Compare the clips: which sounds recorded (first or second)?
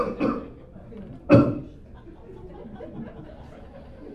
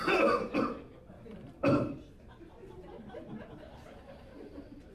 first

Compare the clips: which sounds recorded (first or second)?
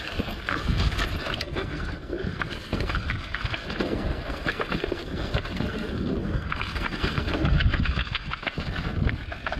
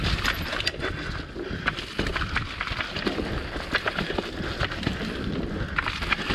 second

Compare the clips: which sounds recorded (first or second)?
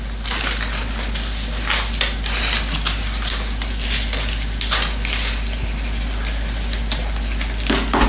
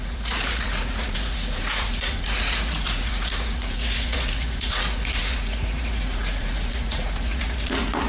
first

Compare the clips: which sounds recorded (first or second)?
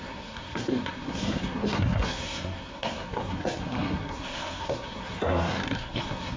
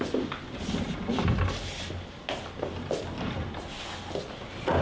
second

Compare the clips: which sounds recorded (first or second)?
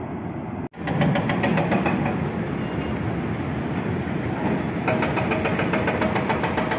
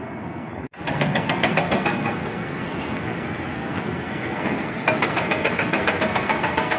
first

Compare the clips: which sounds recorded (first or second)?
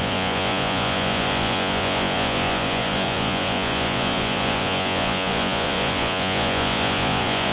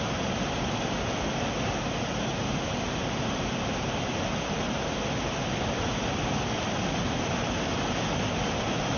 second